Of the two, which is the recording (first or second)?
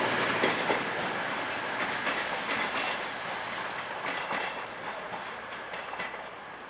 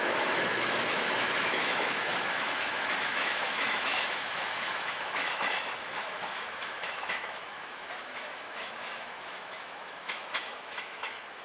first